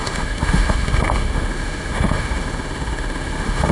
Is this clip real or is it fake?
fake